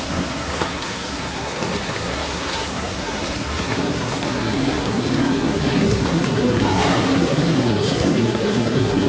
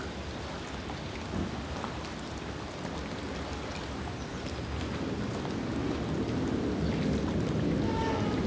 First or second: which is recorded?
second